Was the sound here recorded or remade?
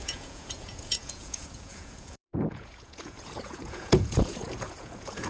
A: remade